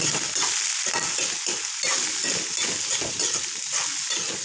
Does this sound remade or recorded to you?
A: recorded